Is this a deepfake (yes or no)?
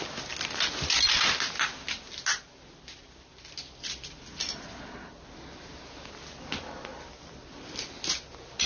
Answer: no